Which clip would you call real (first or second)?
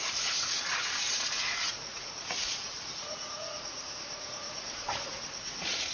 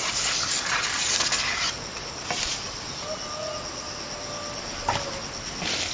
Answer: second